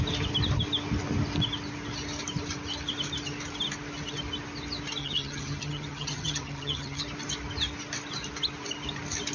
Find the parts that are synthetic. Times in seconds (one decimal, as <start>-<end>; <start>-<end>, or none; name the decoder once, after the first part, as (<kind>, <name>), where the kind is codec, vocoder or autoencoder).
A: 5.0-7.0 (vocoder, HiFi-GAN)